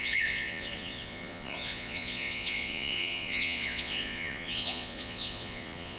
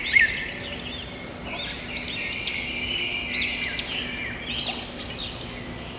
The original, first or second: second